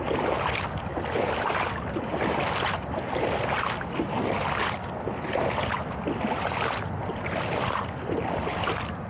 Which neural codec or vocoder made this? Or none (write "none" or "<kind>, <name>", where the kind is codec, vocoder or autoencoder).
none